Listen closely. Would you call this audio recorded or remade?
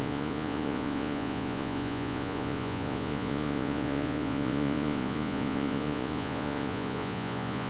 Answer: remade